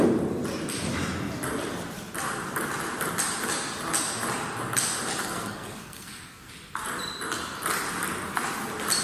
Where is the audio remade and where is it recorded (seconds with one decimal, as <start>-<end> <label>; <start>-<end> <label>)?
0.0-5.2 recorded; 5.2-6.5 remade; 6.5-9.0 recorded